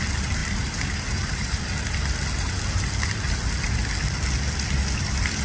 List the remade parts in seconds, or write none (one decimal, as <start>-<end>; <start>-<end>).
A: 0.4-1.6